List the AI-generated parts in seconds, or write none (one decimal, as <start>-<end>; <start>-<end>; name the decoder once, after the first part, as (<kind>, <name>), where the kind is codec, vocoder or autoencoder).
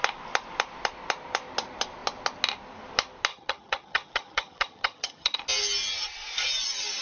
3.3-5.4 (vocoder, HiFi-GAN)